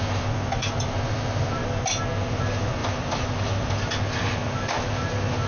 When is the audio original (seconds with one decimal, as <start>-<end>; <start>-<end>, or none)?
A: 0.0-2.8; 3.9-5.5